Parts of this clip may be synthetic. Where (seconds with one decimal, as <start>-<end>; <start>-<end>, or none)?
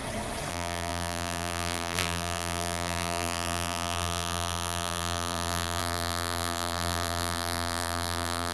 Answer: 0.5-8.5